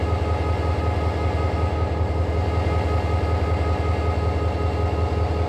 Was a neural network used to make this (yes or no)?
no